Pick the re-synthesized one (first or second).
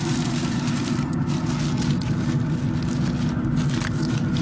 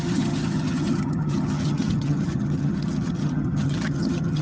second